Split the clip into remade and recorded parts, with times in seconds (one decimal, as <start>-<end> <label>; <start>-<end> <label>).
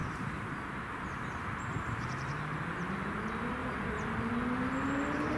0.0-3.2 remade; 3.2-3.6 recorded; 3.6-4.3 remade; 4.3-5.4 recorded